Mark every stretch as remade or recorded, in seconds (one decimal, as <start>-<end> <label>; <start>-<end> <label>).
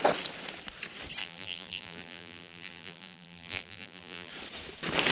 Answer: 0.0-1.2 recorded; 1.2-4.3 remade; 4.3-5.1 recorded